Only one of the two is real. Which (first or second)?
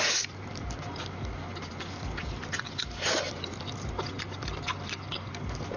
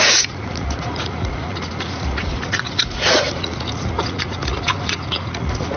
first